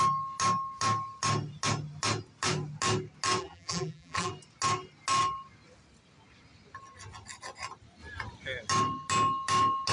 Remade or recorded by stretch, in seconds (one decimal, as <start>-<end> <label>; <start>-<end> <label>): 0.0-3.4 recorded; 3.4-4.3 remade; 4.3-9.9 recorded